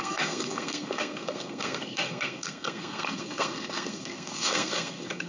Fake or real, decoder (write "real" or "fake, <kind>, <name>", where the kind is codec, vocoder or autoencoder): fake, codec, SNAC